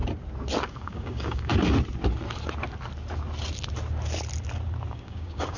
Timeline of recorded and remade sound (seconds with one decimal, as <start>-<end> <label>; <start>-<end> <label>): 0.0-0.6 recorded; 0.6-1.5 remade; 1.5-4.9 recorded; 4.9-5.6 remade